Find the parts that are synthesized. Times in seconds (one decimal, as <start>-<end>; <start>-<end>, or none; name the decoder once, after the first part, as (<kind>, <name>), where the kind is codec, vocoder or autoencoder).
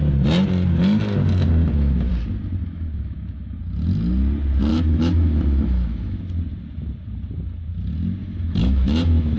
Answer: 1.6-2.1 (autoencoder, DAC-VAE); 2.6-3.6; 4.7-6.2; 8.2-9.4